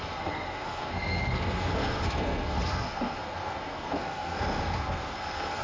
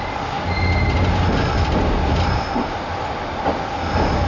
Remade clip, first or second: first